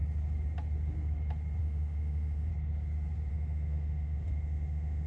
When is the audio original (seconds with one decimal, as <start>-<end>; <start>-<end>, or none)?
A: 0.0-1.6; 2.5-3.3